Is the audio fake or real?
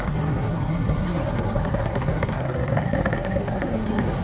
fake